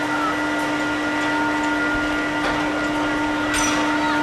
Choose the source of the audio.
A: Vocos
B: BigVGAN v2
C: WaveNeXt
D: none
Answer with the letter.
D